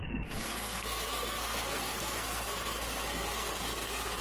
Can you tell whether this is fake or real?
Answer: fake